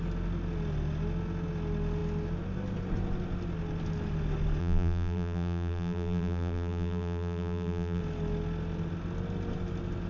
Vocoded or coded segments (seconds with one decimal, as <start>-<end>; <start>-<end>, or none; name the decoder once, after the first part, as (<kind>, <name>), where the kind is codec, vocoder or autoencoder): 4.6-8.0 (vocoder, BigVGAN v2)